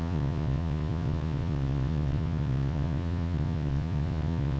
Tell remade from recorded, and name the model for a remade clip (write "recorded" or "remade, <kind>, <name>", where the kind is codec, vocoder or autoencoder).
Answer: remade, vocoder, Vocos